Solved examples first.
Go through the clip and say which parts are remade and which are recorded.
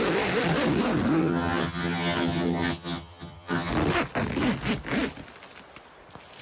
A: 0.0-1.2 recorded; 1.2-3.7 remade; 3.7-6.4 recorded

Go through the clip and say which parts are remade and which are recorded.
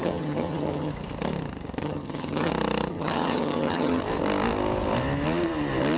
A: 0.0-0.9 remade; 0.9-1.8 recorded; 1.8-2.5 remade; 2.5-2.9 recorded; 2.9-4.0 remade; 4.0-6.0 recorded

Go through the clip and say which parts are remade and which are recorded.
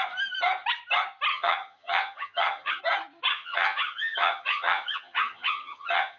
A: 0.0-1.3 recorded; 1.3-2.8 remade; 2.8-3.3 recorded; 3.3-6.2 remade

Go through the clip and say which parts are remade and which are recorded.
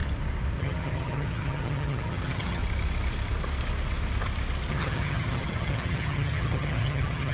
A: 0.0-0.6 recorded; 0.6-2.6 remade; 2.6-4.7 recorded; 4.7-7.3 remade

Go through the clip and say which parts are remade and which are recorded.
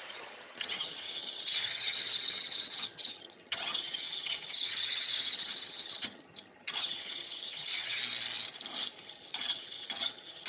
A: 0.0-8.0 remade; 8.0-9.0 recorded; 9.0-10.5 remade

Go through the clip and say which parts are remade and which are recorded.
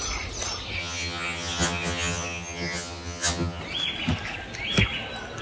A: 0.0-0.8 recorded; 0.8-3.6 remade; 3.6-5.4 recorded